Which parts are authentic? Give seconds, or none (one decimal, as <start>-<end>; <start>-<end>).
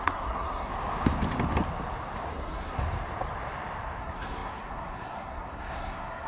0.7-2.3; 2.8-4.0